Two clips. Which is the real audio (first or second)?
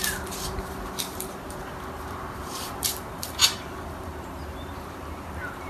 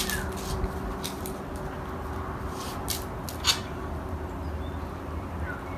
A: second